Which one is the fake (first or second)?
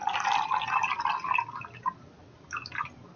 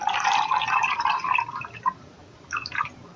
second